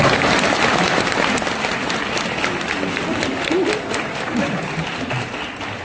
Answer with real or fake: real